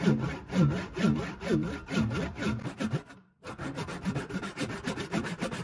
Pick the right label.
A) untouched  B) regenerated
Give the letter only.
B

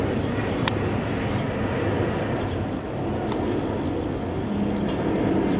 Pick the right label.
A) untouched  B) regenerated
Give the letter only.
A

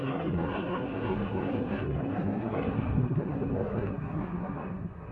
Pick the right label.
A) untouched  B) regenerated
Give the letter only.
B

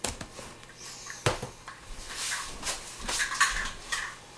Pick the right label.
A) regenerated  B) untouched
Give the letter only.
A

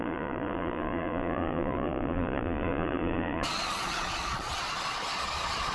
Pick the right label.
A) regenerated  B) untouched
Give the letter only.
A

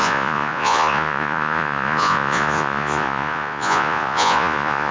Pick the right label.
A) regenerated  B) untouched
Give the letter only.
A